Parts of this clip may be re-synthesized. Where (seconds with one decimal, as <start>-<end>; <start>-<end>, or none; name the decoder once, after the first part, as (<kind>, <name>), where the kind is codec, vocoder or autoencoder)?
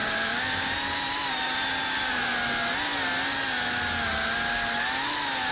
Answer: none